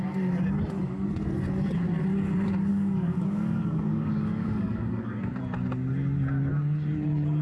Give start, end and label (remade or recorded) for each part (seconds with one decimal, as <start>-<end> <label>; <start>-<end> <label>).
0.0-2.7 recorded; 2.7-5.3 remade; 5.3-7.4 recorded